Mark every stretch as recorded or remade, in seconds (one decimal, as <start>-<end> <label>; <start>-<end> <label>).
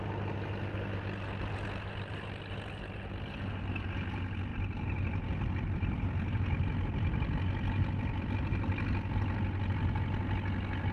0.0-10.9 recorded